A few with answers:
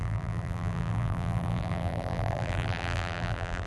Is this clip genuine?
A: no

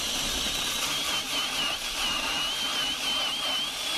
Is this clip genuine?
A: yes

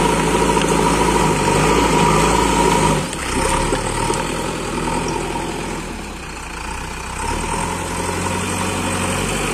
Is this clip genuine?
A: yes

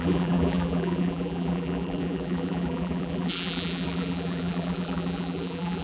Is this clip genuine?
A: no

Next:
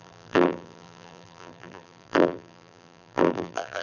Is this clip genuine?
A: no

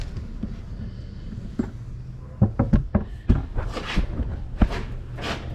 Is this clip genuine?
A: yes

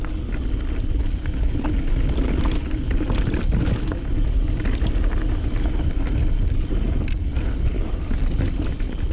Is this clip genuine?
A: yes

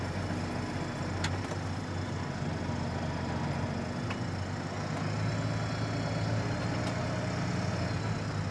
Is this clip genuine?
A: yes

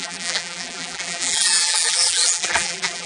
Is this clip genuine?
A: no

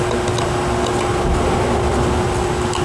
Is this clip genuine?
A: yes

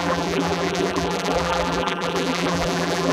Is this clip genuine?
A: no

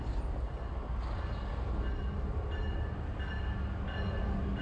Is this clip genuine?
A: yes